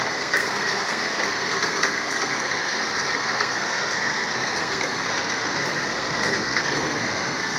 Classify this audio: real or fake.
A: fake